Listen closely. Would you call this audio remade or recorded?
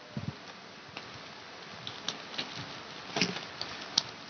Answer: recorded